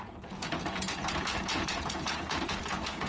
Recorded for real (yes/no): no